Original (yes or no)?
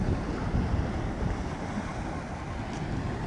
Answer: yes